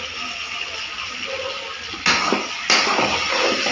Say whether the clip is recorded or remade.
recorded